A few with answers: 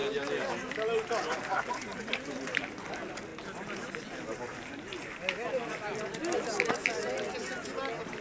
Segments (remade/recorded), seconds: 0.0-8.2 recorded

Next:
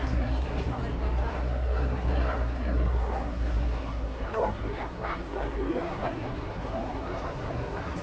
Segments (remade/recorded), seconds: 0.0-0.8 remade; 0.8-1.3 recorded; 1.3-8.0 remade

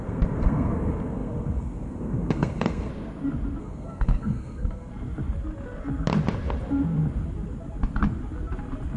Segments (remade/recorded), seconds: 0.0-2.9 remade; 2.9-3.6 recorded; 3.6-4.9 remade; 4.9-9.0 recorded

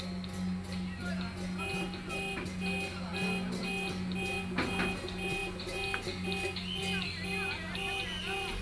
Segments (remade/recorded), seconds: 0.0-8.6 recorded

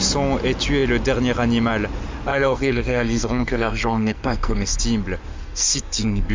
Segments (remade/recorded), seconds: 0.0-2.3 recorded; 2.3-4.8 remade; 4.8-5.3 recorded; 5.3-6.3 remade

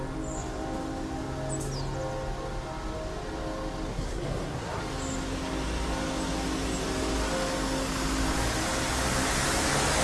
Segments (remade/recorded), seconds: 0.0-3.9 recorded; 3.9-4.8 remade; 4.8-10.0 recorded

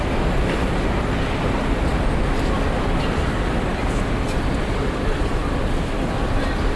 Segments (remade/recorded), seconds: 0.0-6.8 recorded